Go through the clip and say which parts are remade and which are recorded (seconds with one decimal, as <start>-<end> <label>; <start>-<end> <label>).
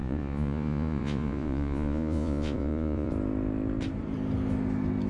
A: 0.0-3.1 remade; 3.1-5.1 recorded